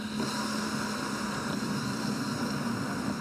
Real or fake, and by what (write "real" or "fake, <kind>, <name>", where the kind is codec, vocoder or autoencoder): real